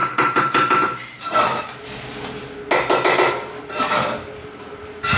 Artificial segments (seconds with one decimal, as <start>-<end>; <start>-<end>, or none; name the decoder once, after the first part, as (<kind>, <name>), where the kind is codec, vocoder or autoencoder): 0.0-1.6 (vocoder, BigVGAN v2)